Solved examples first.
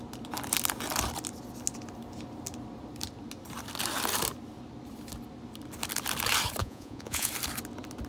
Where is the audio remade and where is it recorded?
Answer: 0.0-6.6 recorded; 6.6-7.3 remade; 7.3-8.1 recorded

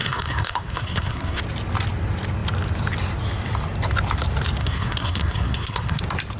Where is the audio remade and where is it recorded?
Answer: 0.0-1.4 remade; 1.4-4.6 recorded; 4.6-6.0 remade; 6.0-6.4 recorded